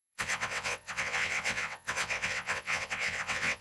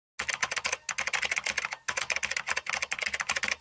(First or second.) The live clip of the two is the second